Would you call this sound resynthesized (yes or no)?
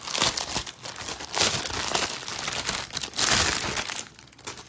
no